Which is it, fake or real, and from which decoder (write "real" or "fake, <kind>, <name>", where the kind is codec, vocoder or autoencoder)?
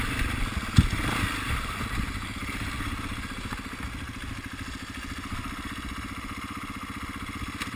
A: real